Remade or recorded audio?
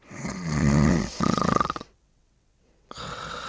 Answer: remade